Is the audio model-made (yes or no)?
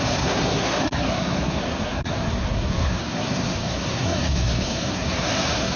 yes